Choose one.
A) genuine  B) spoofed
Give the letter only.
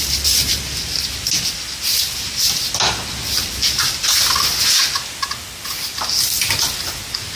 A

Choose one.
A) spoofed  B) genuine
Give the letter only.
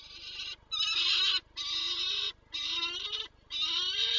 B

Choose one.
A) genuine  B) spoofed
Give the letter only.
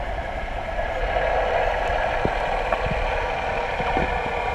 A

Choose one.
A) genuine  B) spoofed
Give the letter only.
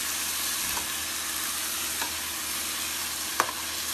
A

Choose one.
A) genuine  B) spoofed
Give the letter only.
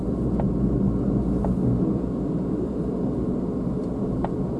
A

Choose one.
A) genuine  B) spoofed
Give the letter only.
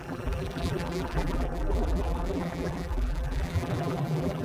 B